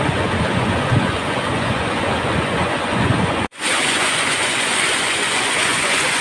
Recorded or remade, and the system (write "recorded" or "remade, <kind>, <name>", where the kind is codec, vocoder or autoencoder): remade, vocoder, Vocos